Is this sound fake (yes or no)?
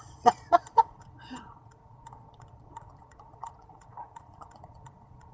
yes